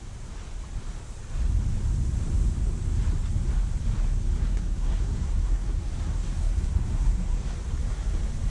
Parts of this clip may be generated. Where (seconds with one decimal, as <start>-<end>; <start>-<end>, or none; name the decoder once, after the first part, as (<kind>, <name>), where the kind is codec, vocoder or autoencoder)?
4.4-7.5 (codec, SNAC)